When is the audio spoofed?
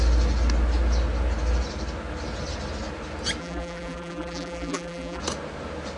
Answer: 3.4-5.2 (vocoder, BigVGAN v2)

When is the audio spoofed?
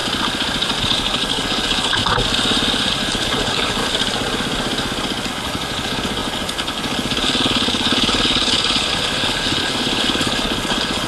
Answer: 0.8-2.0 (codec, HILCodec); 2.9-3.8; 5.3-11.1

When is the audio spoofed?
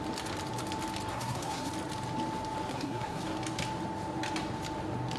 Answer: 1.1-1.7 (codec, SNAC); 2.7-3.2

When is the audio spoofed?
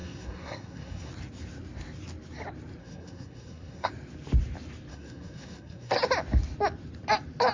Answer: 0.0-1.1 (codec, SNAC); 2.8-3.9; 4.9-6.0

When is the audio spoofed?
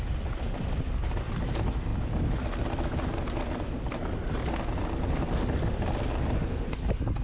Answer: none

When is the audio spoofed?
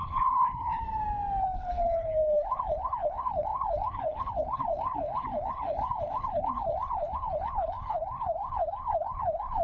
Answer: 0.0-0.8 (codec, HILCodec); 1.4-9.6